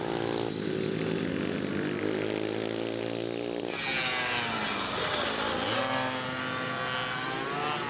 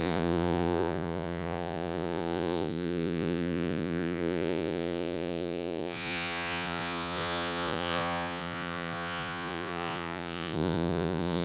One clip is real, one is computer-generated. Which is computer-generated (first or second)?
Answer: second